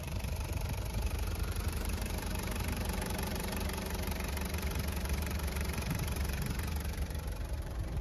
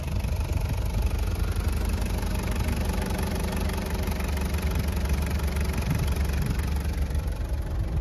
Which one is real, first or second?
second